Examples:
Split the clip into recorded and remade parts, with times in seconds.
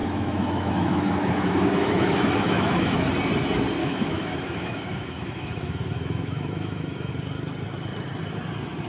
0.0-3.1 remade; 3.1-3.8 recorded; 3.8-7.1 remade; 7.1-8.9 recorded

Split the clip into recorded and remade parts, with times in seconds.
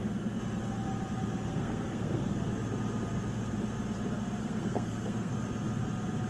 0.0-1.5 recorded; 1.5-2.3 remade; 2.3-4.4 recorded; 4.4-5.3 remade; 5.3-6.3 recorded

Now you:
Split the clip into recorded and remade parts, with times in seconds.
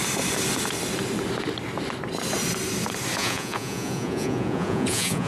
0.0-3.2 recorded; 3.2-5.3 remade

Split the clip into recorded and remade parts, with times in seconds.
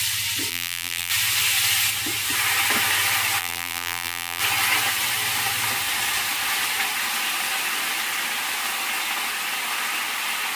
0.0-0.5 recorded; 0.5-1.1 remade; 1.1-3.4 recorded; 3.4-4.4 remade; 4.4-10.6 recorded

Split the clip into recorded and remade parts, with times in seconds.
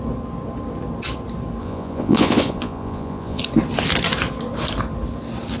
0.0-1.6 recorded; 1.6-3.4 remade; 3.4-5.6 recorded